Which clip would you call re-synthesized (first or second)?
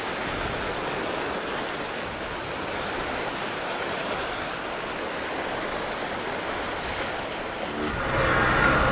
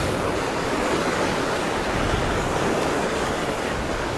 second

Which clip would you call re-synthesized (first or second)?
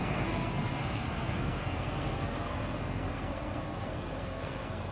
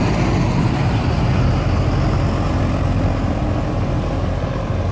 first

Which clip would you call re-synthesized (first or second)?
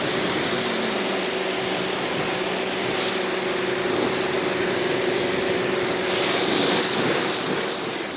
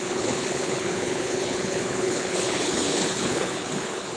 second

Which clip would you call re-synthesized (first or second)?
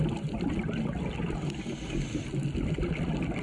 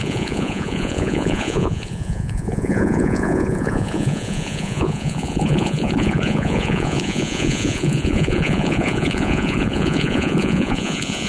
second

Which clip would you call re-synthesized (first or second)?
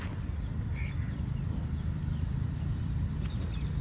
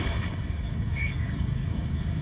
second